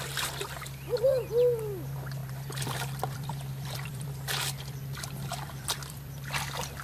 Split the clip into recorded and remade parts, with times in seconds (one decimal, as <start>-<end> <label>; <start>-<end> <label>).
0.0-2.2 recorded; 2.2-6.3 remade; 6.3-6.8 recorded